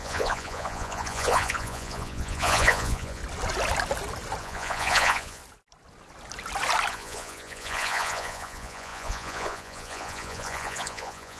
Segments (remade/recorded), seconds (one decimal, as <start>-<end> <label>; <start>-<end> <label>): 0.0-3.2 remade; 3.2-4.4 recorded; 4.4-5.4 remade; 5.4-6.9 recorded; 6.9-11.4 remade